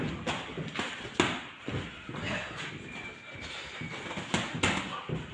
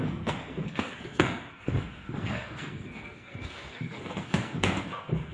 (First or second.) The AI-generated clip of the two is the second